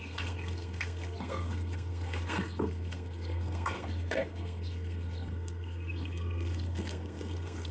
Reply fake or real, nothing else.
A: fake